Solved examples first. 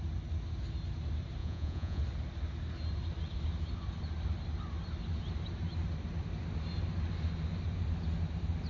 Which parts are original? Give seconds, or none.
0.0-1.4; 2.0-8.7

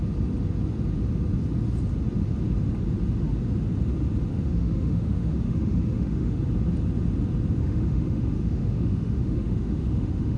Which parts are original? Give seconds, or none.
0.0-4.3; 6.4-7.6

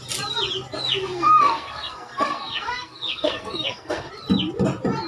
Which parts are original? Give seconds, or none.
0.0-1.0; 4.1-5.1

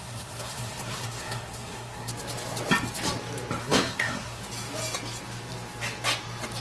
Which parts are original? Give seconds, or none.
2.1-3.6; 4.4-6.6

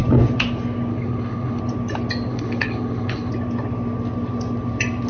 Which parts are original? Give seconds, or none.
0.0-0.9; 1.6-2.3; 3.3-5.1